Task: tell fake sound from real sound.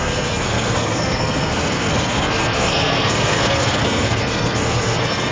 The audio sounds fake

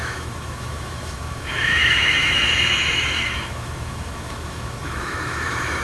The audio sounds fake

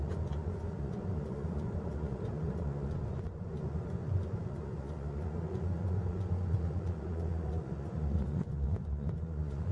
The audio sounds fake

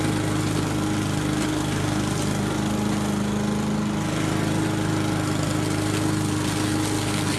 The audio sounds real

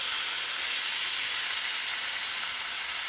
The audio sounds real